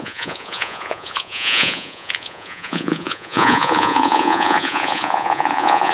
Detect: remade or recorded remade